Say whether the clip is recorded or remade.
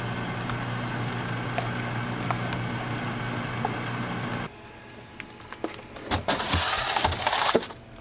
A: recorded